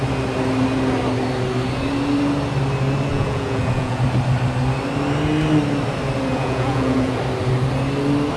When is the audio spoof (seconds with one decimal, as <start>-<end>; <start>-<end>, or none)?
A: 3.1-4.0; 6.3-7.2